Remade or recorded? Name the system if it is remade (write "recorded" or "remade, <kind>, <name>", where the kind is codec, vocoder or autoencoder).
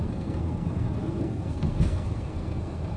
remade, codec, SNAC